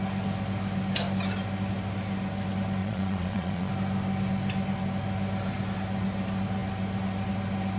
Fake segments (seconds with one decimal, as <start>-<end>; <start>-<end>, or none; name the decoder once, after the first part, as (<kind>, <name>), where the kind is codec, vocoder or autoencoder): 2.8-3.7 (vocoder, Vocos)